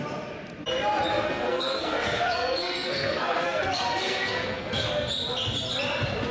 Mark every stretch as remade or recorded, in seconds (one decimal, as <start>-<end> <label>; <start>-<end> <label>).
0.0-1.1 recorded; 1.1-4.9 remade; 4.9-6.3 recorded